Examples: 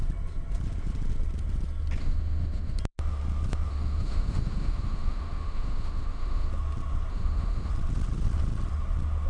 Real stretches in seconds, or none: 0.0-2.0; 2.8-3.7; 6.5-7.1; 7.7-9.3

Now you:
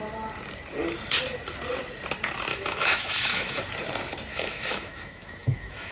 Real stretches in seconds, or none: 0.0-2.5; 3.6-4.3

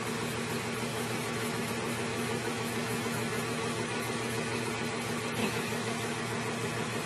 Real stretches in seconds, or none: 0.0-0.9; 1.7-2.1; 4.7-5.4; 6.2-7.1

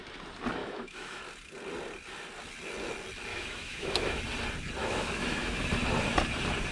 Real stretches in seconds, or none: 0.0-0.6; 1.2-3.3; 4.2-4.8; 5.6-6.7

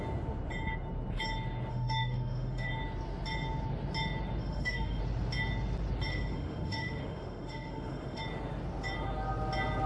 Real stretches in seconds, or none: 0.0-1.7; 2.7-4.4; 5.0-6.1; 8.2-9.9

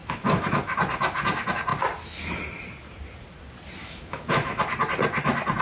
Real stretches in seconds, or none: 0.6-3.8; 4.6-5.6

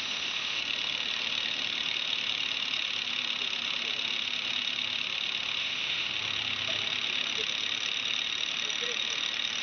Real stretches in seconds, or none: 0.6-5.6; 6.1-9.6

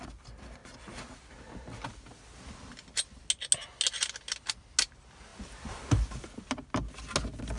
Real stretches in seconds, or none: 0.0-7.6